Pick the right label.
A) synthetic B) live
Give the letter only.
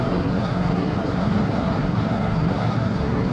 A